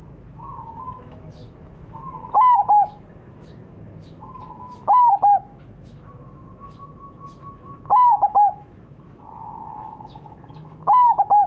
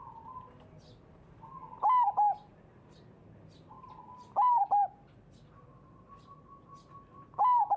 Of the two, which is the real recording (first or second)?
second